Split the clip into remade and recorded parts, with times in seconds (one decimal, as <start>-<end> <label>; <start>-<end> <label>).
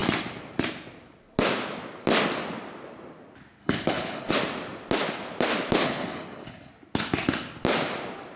0.0-3.6 recorded; 3.6-4.3 remade; 4.3-5.8 recorded; 5.8-6.7 remade; 6.7-8.4 recorded